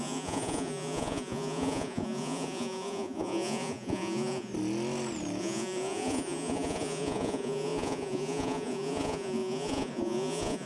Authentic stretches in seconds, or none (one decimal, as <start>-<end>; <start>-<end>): 4.5-5.4